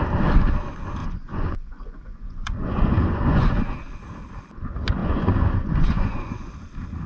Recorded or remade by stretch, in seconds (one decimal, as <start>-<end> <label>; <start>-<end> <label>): 0.0-1.0 recorded; 1.0-3.6 remade; 3.6-5.0 recorded; 5.0-6.5 remade; 6.5-7.1 recorded